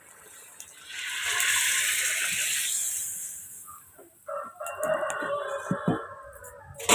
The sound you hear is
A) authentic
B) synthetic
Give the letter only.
A